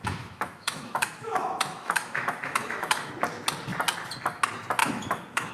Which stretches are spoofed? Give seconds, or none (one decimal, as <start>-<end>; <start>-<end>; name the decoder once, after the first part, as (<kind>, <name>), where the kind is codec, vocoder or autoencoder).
0.0-3.1 (autoencoder, DAC-VAE); 4.8-5.5